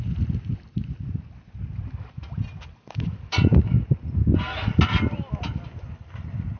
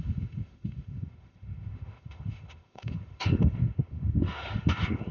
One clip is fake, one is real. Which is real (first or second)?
first